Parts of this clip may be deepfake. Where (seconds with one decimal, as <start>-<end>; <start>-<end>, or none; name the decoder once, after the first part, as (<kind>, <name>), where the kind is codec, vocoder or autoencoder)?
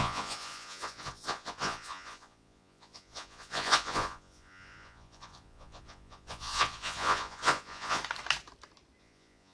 0.0-8.0 (vocoder, Vocos); 9.0-9.5